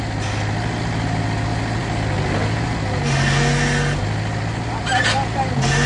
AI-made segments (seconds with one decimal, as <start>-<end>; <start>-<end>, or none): none